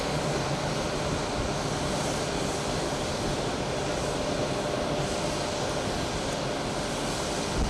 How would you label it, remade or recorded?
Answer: recorded